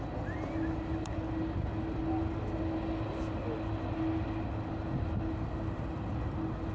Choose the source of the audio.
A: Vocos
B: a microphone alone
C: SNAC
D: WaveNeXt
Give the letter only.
B